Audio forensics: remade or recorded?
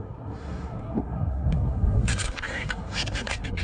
remade